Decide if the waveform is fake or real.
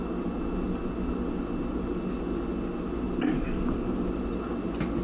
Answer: real